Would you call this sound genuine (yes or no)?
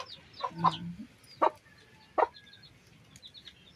yes